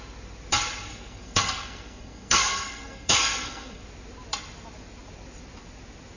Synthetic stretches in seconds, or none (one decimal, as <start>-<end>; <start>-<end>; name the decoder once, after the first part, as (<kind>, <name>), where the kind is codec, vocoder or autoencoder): 0.9-3.8 (codec, SNAC)